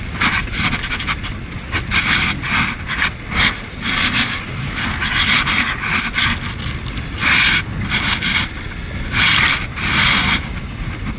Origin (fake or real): real